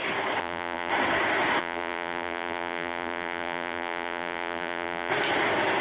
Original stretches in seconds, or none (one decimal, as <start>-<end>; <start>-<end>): 0.0-0.4; 0.9-1.6; 5.1-5.8